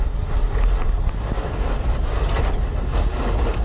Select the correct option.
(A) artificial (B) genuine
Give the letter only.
B